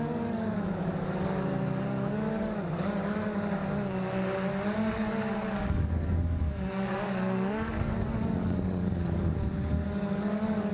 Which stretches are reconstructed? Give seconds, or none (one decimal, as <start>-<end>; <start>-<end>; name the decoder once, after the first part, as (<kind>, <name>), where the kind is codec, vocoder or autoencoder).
0.0-3.6 (codec, DAC); 4.5-10.7